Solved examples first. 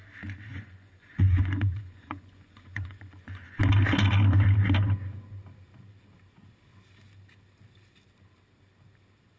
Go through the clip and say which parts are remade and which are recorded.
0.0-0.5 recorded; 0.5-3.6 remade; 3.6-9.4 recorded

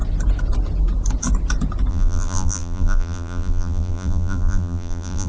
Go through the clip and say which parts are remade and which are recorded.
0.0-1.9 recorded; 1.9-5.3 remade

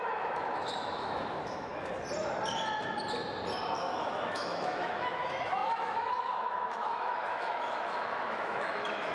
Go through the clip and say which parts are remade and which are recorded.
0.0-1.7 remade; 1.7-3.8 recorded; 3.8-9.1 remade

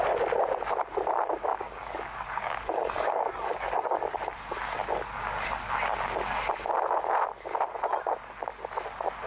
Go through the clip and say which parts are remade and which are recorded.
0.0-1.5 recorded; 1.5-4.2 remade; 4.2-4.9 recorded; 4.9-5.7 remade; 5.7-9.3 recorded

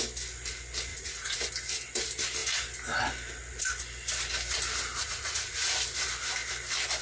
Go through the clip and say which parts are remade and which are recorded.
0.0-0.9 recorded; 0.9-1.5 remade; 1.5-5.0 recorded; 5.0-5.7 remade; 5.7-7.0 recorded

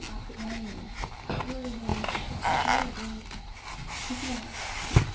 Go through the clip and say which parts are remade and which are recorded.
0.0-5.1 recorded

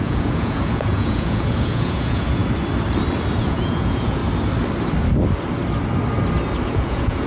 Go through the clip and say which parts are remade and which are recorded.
0.0-2.4 remade; 2.4-3.4 recorded; 3.4-4.2 remade; 4.2-6.7 recorded; 6.7-7.3 remade